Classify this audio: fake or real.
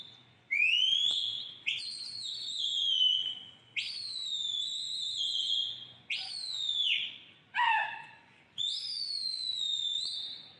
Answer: fake